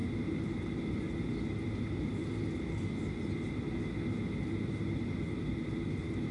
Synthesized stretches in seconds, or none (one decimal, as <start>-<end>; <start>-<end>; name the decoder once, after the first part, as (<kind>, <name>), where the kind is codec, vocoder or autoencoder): none